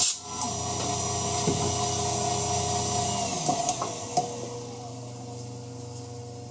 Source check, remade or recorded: recorded